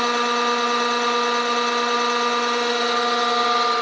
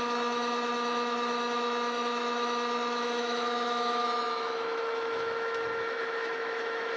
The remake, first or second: second